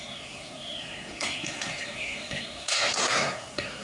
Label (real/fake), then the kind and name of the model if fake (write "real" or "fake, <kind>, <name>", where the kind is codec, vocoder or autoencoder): fake, codec, SNAC